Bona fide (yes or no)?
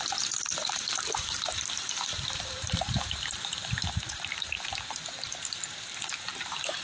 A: no